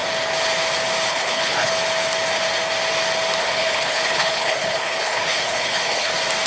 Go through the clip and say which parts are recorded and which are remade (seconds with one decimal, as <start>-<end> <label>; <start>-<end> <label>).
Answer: 0.0-1.1 recorded; 1.1-1.7 remade; 1.7-3.4 recorded; 3.4-6.1 remade; 6.1-6.5 recorded